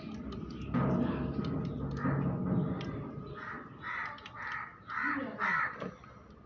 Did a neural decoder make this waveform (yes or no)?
no